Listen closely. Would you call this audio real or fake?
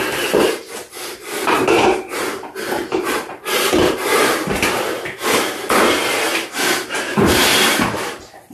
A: fake